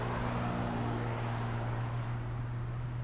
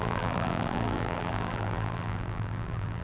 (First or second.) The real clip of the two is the first